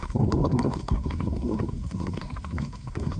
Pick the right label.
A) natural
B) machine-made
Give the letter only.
B